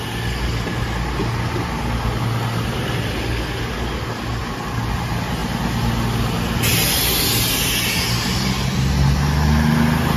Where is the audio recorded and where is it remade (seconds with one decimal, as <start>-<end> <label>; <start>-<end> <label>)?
0.0-10.2 recorded

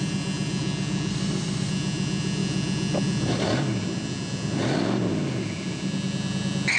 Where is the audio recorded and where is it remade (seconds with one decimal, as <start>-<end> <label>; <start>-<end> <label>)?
0.0-1.1 recorded; 1.1-1.7 remade; 1.7-6.8 recorded

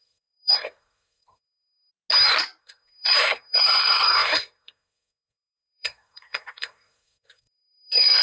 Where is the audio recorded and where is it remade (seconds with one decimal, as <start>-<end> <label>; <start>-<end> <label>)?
0.0-1.9 remade; 1.9-2.6 recorded; 2.6-8.2 remade

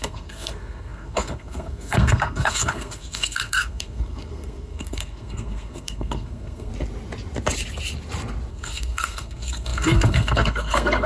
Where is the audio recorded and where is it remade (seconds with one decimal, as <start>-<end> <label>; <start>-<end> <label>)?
0.0-6.7 remade; 6.7-8.5 recorded; 8.5-11.1 remade

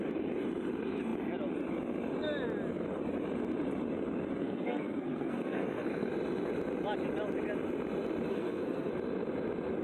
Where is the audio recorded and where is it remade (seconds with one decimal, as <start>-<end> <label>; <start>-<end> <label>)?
0.0-4.4 recorded; 4.4-6.1 remade; 6.1-8.3 recorded; 8.3-8.9 remade; 8.9-9.8 recorded

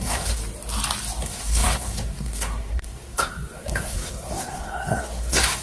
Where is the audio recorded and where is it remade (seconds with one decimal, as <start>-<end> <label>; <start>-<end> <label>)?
0.0-0.4 remade; 0.4-1.2 recorded; 1.2-5.6 remade

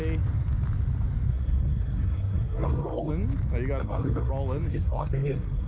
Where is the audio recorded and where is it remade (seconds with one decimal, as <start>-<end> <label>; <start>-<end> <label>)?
0.0-1.3 recorded; 1.3-3.1 remade; 3.1-3.8 recorded; 3.8-4.3 remade; 4.3-4.7 recorded; 4.7-5.7 remade

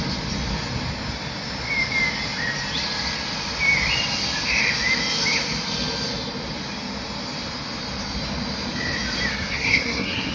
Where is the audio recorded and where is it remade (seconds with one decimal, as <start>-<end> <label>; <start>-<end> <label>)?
0.0-9.3 recorded; 9.3-10.3 remade